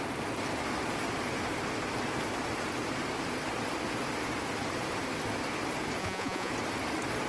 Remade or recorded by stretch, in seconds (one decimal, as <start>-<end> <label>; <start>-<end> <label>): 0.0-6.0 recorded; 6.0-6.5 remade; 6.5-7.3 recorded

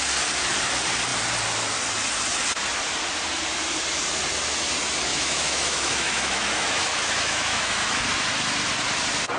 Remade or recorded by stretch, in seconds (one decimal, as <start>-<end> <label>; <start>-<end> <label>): 0.0-5.1 recorded; 5.1-8.0 remade; 8.0-9.4 recorded

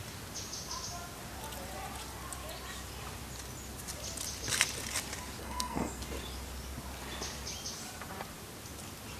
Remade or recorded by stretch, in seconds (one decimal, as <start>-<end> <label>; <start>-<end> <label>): 0.0-5.4 recorded; 5.4-6.0 remade; 6.0-9.2 recorded

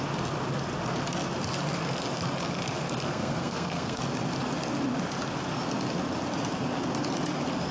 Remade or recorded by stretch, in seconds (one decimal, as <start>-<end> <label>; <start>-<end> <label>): 0.0-3.1 recorded; 3.1-4.0 remade; 4.0-7.7 recorded

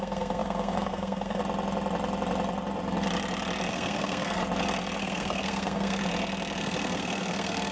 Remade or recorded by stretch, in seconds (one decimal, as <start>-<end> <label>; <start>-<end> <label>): 0.0-1.4 remade; 1.4-3.7 recorded; 3.7-4.4 remade; 4.4-5.0 recorded; 5.0-6.0 remade; 6.0-6.6 recorded; 6.6-7.7 remade